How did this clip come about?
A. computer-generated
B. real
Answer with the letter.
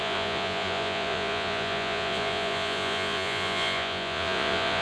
A